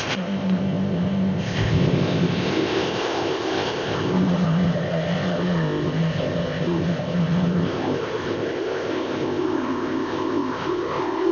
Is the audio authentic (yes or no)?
no